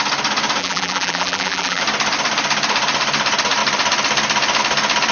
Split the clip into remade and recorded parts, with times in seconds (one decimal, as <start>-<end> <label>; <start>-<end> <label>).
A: 0.0-0.6 recorded; 0.6-1.8 remade; 1.8-5.1 recorded